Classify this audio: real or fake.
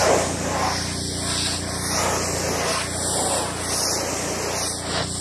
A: real